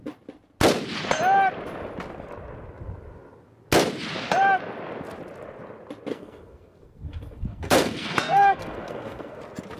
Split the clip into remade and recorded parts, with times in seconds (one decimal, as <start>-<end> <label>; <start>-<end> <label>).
0.0-6.1 recorded; 6.1-9.4 remade; 9.4-9.8 recorded